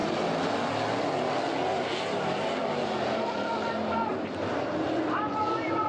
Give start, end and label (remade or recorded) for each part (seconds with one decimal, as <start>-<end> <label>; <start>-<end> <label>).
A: 0.0-1.7 recorded; 1.7-3.2 remade; 3.2-4.1 recorded; 4.1-4.7 remade; 4.7-5.9 recorded